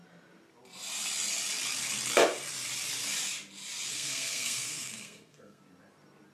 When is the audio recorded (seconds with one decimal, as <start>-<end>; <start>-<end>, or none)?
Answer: 0.0-3.9; 5.6-6.3